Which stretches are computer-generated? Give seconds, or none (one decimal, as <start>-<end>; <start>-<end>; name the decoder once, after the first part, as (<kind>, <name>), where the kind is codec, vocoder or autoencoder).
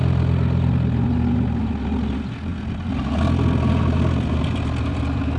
none